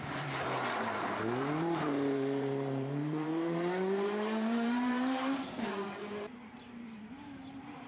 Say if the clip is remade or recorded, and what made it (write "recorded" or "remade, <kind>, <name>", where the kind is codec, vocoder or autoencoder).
remade, vocoder, BigVGAN v2